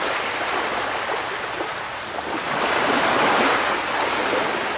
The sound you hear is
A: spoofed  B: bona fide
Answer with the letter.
B